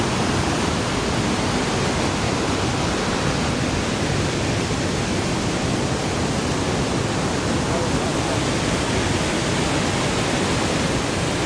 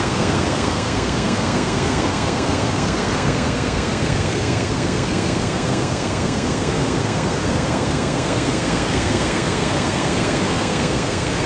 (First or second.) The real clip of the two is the first